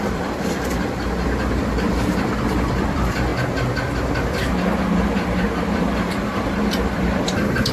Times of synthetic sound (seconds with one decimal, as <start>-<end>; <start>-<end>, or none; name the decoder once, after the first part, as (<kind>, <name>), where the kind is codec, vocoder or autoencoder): 0.0-3.3 (vocoder, BigVGAN v2); 5.6-7.7